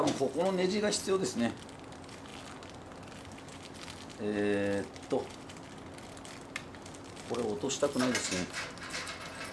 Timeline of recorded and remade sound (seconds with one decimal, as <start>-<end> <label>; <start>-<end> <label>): 0.0-9.5 recorded